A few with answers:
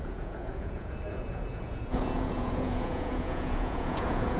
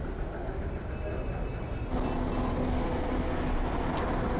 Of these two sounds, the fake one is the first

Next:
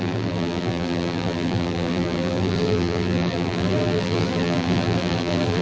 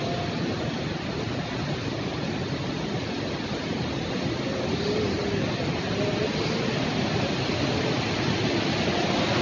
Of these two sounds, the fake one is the first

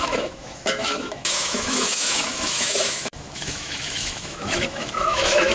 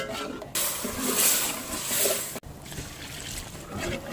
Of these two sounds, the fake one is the first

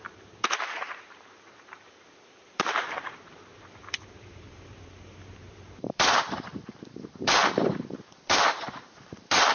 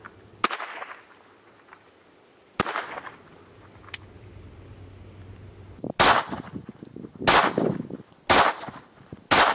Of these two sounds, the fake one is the first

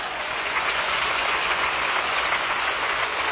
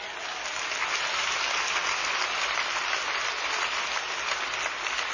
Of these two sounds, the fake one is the first